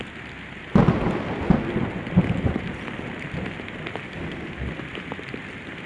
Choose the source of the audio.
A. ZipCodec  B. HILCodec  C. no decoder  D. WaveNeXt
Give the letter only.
C